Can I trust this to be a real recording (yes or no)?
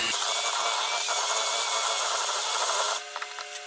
yes